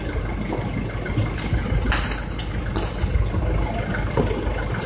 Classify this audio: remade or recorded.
recorded